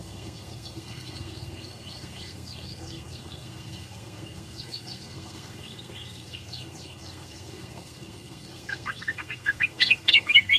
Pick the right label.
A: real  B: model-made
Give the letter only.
B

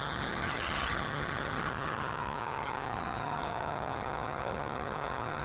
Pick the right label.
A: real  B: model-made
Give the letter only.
B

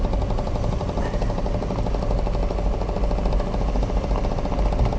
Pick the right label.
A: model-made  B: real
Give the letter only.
B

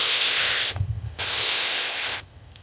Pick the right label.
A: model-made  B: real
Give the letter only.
A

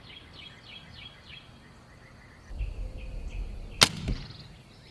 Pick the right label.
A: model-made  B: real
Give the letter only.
B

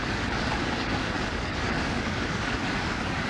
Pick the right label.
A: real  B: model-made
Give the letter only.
B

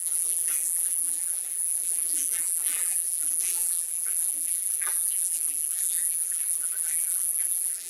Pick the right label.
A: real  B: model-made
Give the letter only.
B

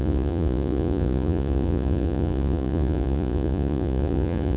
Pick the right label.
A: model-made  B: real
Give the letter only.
A